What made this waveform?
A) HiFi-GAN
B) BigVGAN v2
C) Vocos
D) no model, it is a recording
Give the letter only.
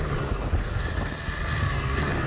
D